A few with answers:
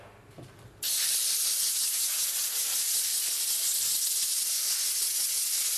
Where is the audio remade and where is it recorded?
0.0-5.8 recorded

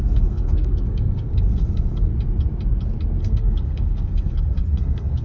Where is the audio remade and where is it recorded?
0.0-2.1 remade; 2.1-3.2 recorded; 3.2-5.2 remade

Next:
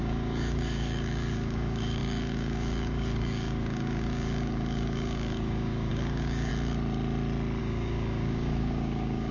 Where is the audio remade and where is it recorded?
0.0-6.5 remade; 6.5-7.6 recorded; 7.6-9.3 remade

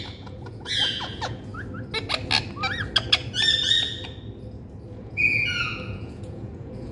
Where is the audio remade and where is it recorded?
0.0-1.5 remade; 1.5-4.9 recorded; 4.9-6.9 remade

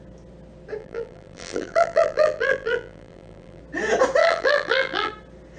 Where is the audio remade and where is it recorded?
0.0-0.8 recorded; 0.8-3.6 remade; 3.6-4.2 recorded; 4.2-5.1 remade; 5.1-5.6 recorded

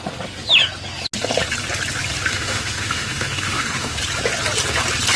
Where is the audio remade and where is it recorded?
0.0-2.3 recorded; 2.3-4.0 remade; 4.0-5.2 recorded

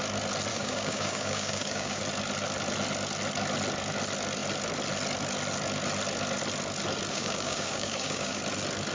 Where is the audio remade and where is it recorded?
0.0-0.5 recorded; 0.5-2.0 remade; 2.0-7.1 recorded; 7.1-8.4 remade; 8.4-8.9 recorded